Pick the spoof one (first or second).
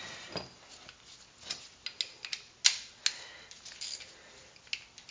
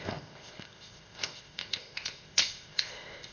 second